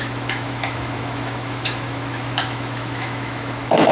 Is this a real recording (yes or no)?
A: no